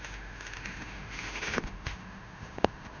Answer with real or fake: fake